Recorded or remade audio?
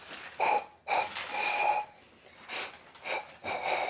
recorded